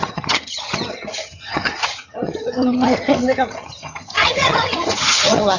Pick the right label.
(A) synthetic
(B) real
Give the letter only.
A